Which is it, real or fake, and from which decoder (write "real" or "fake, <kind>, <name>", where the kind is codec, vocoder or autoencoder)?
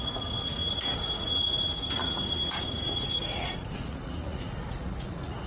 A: fake, vocoder, Vocos